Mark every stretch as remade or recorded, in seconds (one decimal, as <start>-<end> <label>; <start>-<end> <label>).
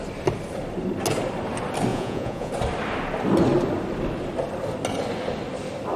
0.0-1.9 recorded; 1.9-2.5 remade; 2.5-6.0 recorded